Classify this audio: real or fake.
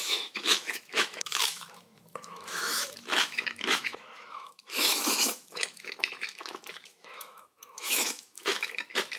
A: fake